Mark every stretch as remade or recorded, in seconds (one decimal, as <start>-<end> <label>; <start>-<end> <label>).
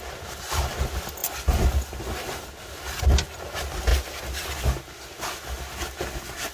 0.0-6.5 recorded